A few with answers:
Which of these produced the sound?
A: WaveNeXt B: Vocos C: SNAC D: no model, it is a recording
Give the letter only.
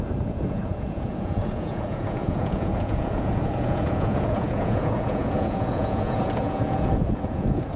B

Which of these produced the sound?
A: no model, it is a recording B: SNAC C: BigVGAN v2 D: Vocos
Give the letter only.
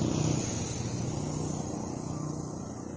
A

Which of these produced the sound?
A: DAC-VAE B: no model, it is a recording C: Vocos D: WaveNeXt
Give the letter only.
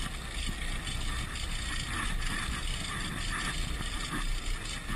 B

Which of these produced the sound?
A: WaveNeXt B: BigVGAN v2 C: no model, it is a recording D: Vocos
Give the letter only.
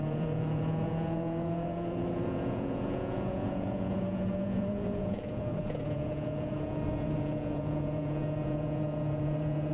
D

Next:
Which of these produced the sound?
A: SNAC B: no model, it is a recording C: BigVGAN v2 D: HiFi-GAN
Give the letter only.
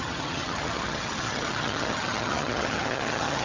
D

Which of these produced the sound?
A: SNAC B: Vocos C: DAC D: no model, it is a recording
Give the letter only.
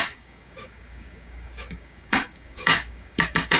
C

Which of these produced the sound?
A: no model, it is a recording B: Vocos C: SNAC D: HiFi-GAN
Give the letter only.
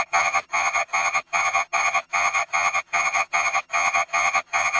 D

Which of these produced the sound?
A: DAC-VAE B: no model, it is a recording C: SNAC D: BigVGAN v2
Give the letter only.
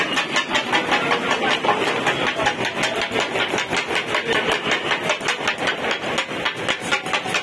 B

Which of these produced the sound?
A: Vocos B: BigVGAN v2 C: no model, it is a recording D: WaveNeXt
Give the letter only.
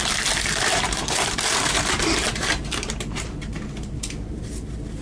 B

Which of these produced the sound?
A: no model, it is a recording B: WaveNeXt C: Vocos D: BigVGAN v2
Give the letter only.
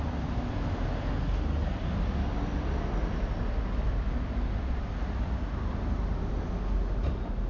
A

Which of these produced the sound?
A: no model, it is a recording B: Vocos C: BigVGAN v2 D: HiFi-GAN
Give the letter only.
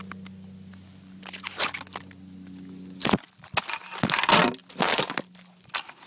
A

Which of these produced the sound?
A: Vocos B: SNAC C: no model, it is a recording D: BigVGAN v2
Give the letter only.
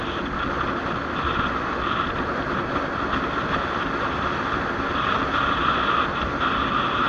C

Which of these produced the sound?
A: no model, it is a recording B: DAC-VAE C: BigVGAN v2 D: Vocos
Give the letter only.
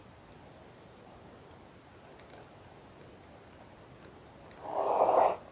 A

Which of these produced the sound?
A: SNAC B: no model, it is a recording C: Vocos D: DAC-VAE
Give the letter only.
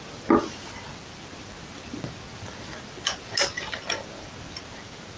B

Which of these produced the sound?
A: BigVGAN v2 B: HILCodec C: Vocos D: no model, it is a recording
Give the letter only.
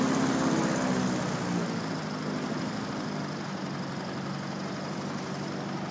D